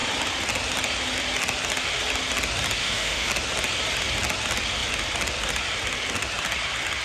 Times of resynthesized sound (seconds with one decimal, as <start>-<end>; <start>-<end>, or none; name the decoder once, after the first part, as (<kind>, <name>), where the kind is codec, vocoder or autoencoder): 2.8-3.3 (autoencoder, DAC-VAE)